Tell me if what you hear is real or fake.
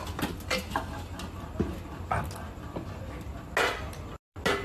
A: real